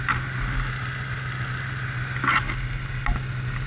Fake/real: real